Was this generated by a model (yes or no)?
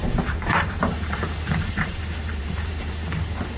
yes